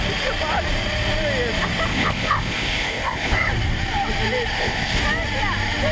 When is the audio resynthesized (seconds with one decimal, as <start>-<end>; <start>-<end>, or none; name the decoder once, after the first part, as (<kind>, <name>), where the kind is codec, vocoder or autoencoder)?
1.9-3.5 (codec, ZipCodec); 4.5-5.0